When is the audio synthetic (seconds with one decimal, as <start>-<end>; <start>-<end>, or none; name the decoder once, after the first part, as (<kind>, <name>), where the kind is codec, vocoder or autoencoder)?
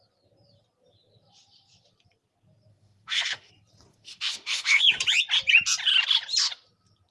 2.7-3.5 (autoencoder, DAC-VAE); 3.9-4.9